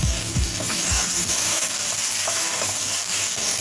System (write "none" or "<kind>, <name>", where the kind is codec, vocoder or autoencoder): codec, DAC